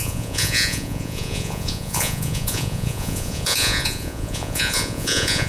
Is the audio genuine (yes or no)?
no